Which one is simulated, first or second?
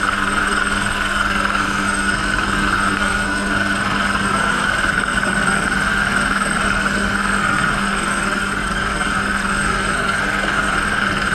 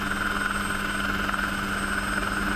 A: first